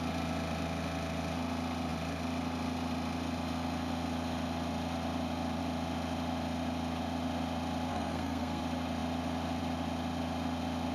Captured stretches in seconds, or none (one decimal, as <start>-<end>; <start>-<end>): 0.0-7.9; 8.6-10.9